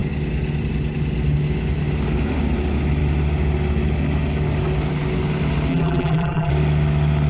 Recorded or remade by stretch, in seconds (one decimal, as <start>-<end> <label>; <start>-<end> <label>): 0.0-5.7 recorded; 5.7-6.5 remade; 6.5-7.3 recorded

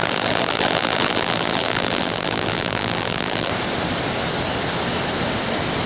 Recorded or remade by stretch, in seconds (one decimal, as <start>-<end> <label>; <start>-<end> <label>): 0.0-3.5 remade; 3.5-5.9 recorded